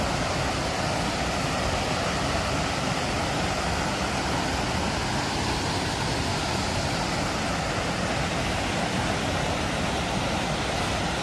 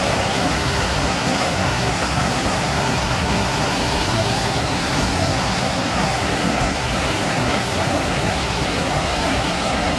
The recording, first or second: first